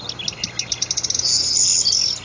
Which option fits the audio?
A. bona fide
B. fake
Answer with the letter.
A